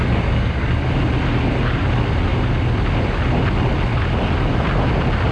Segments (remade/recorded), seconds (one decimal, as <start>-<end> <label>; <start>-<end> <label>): 0.0-0.9 remade; 0.9-5.3 recorded